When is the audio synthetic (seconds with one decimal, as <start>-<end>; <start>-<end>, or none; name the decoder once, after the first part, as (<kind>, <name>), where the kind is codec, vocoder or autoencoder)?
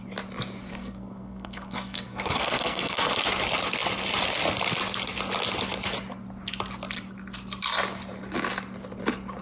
0.7-3.1 (codec, SNAC)